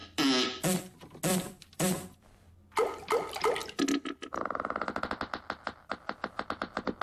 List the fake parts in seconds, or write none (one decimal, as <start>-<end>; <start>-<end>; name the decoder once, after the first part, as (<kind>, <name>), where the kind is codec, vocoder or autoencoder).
1.3-2.5 (vocoder, BigVGAN v2)